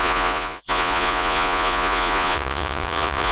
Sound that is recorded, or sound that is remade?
remade